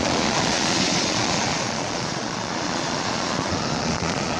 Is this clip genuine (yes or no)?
no